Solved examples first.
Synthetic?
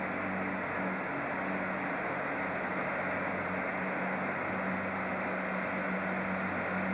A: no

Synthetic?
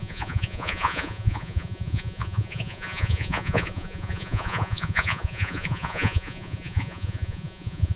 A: yes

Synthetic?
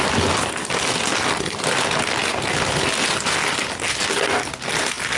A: no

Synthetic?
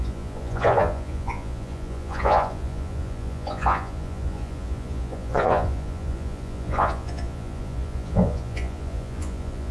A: yes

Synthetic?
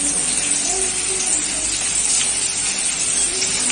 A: no